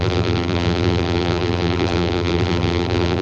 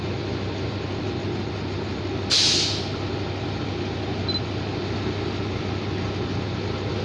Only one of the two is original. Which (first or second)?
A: second